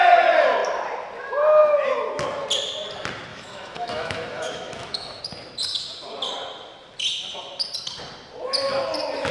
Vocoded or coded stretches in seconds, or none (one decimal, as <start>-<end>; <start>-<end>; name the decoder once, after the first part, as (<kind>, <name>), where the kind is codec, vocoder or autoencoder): 3.3-5.2 (autoencoder, DAC-VAE)